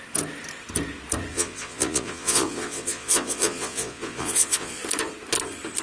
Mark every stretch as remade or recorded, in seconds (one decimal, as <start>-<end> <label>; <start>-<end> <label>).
0.0-1.3 recorded; 1.3-4.8 remade; 4.8-5.8 recorded